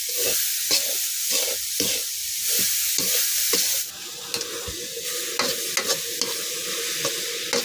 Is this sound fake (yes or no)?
no